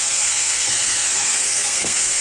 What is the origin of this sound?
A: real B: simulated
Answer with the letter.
B